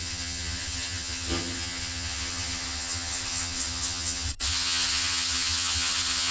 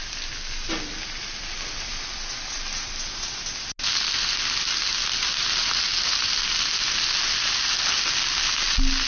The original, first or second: second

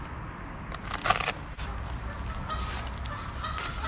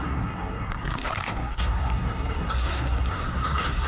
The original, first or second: first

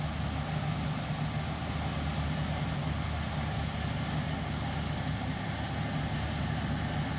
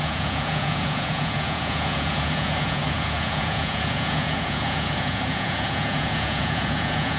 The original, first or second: first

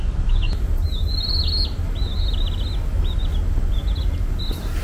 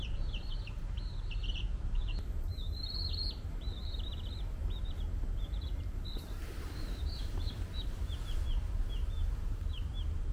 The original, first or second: first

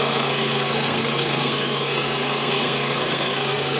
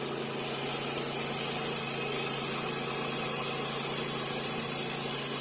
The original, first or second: second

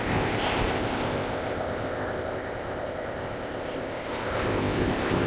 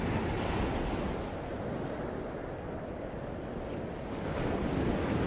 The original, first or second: second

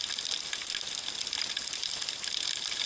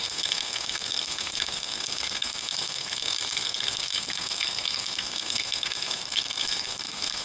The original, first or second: first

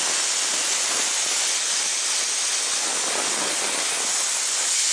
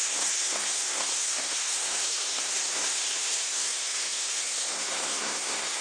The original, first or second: first